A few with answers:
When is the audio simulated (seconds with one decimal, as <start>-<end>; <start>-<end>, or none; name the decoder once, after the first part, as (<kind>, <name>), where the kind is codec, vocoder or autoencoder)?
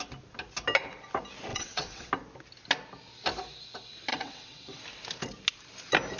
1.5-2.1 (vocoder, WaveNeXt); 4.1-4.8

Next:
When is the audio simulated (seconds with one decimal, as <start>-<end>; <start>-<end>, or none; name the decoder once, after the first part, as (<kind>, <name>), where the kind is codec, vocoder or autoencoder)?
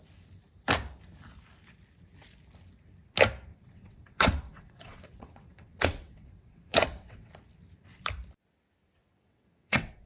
3.5-7.3 (vocoder, WaveNeXt); 9.0-10.1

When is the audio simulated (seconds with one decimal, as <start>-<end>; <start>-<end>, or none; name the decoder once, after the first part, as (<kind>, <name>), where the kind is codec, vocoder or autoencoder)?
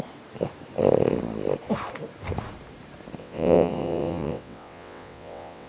3.2-5.7 (vocoder, WaveNeXt)